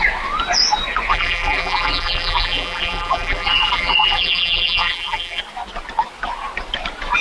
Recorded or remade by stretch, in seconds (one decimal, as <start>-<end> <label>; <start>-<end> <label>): 0.0-1.1 recorded; 1.1-5.4 remade; 5.4-7.2 recorded